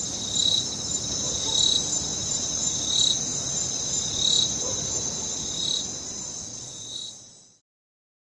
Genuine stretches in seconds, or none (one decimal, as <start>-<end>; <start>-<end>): 0.0-6.5; 7.6-8.3